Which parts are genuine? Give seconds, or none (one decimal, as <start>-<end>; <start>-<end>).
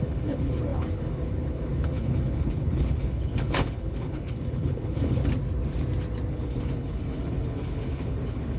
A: 5.2-6.3